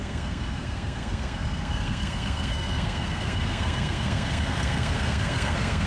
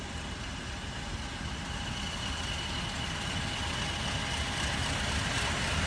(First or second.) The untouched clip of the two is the second